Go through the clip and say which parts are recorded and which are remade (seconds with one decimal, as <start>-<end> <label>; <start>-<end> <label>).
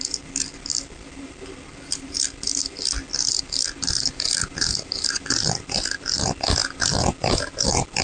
0.0-8.0 recorded